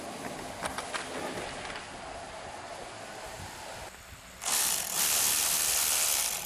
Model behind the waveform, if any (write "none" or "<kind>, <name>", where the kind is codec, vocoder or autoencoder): none